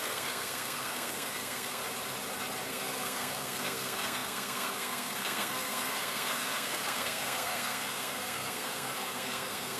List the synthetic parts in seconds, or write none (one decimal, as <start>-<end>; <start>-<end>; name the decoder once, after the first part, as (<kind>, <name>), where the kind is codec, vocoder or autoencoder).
0.0-1.8 (codec, SNAC); 2.7-9.8